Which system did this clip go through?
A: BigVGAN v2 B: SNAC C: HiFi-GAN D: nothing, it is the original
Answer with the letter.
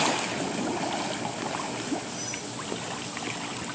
D